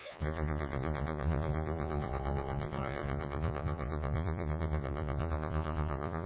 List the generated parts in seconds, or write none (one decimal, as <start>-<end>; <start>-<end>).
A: 0.0-6.3